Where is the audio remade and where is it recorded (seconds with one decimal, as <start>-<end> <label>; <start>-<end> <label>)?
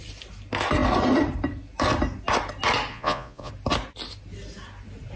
0.0-2.9 recorded; 2.9-3.5 remade; 3.5-5.2 recorded